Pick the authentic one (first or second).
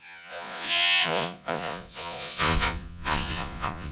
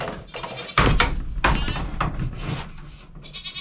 second